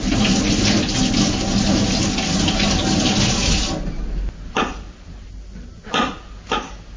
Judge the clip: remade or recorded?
recorded